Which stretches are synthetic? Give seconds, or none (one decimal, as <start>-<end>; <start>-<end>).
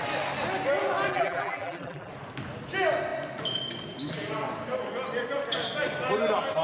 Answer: 1.1-2.1